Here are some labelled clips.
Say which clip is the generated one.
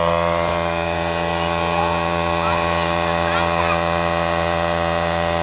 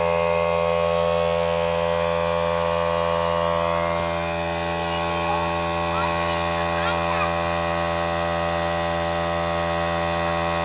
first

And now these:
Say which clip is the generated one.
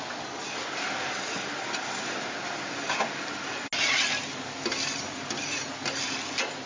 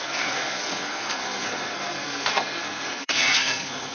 second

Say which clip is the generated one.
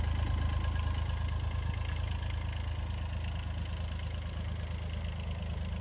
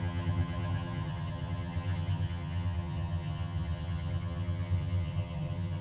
second